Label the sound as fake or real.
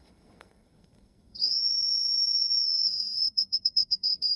fake